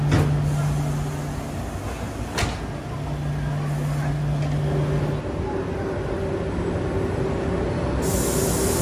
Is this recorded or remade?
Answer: recorded